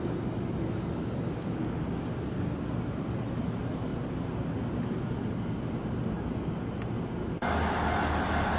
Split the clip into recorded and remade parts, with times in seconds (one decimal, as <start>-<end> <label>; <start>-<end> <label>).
0.0-8.6 recorded